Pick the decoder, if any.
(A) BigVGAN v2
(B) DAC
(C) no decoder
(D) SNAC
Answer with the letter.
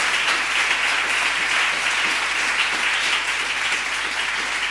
C